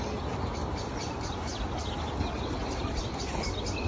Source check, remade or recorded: recorded